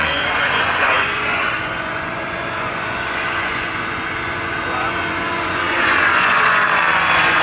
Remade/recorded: remade